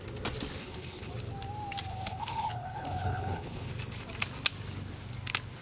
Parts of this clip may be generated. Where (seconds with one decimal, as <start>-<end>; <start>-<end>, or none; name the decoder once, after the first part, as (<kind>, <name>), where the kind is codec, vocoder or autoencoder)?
0.6-1.1 (codec, HILCodec); 1.9-3.7